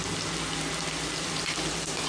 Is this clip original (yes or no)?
yes